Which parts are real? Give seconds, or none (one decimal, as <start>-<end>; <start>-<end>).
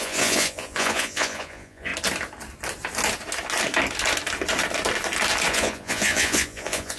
1.9-5.5